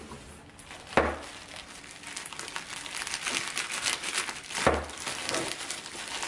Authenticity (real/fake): real